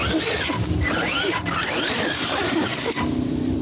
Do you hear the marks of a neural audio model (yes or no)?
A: no